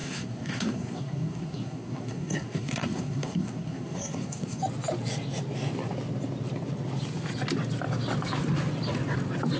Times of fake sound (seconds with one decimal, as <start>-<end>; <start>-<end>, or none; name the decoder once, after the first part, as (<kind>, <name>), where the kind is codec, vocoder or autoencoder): 0.0-4.6 (codec, SNAC)